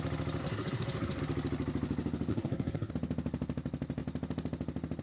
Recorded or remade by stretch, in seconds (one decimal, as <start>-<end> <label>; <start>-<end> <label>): 0.0-0.4 recorded; 0.4-1.2 remade; 1.2-2.3 recorded; 2.3-2.9 remade; 2.9-5.0 recorded